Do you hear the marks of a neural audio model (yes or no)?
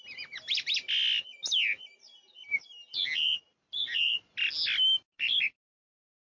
no